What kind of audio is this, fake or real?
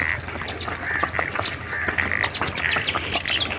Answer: real